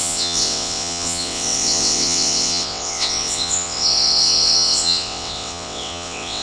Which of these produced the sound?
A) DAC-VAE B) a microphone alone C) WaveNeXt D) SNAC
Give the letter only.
C